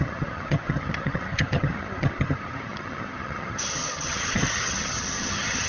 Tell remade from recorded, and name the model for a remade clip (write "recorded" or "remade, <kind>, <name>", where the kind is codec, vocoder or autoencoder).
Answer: remade, vocoder, HiFi-GAN